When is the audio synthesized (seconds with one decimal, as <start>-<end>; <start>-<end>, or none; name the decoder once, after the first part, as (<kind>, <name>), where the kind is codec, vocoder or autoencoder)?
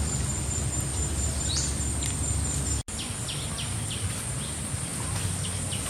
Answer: 0.9-1.5 (vocoder, BigVGAN v2)